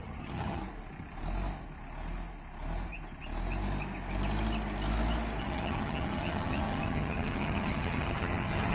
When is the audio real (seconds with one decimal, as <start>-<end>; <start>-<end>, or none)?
0.6-5.4